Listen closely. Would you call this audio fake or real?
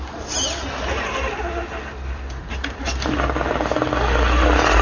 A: real